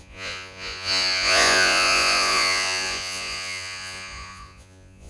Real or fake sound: fake